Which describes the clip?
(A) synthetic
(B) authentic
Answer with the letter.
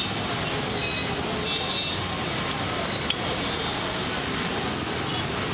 B